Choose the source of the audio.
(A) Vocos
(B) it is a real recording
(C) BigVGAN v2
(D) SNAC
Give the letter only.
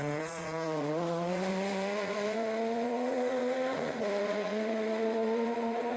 A